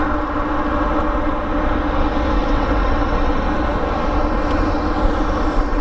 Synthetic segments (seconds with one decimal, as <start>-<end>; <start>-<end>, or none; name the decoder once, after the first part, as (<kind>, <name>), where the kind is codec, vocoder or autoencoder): 2.4-3.3 (vocoder, WaveNeXt)